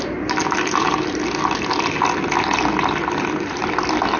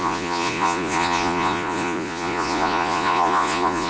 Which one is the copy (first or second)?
second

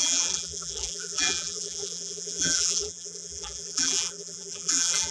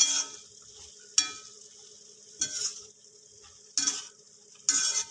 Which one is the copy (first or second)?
first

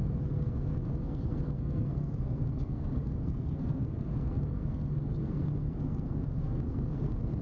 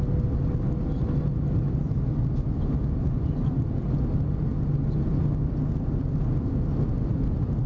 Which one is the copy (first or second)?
first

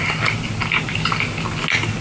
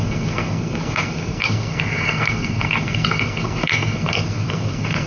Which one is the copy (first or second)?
second